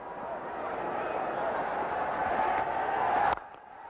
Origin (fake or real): real